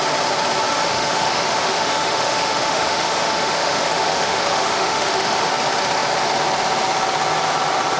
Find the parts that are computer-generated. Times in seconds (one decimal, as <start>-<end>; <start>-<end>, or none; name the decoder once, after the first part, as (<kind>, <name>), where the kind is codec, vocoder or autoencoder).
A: 0.7-5.5 (autoencoder, DAC-VAE)